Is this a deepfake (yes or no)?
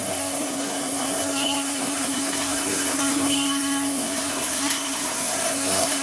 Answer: yes